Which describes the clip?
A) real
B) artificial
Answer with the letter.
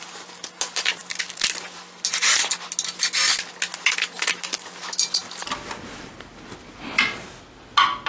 A